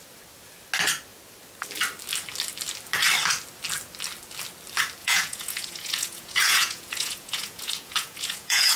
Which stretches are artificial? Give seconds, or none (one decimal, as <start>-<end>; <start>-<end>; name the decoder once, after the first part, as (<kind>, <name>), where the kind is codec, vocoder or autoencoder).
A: 5.0-8.8 (vocoder, Vocos)